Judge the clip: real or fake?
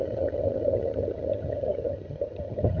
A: fake